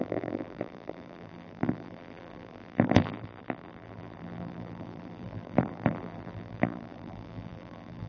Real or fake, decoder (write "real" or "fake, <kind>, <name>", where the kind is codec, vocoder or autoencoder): fake, vocoder, BigVGAN v2